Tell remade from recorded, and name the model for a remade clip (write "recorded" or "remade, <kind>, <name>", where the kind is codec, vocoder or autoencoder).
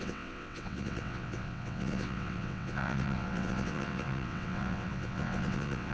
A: remade, vocoder, WaveNeXt